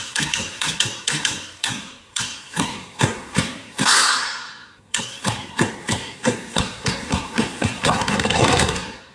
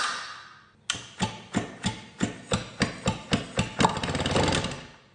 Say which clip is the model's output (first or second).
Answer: first